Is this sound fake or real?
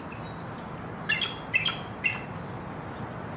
real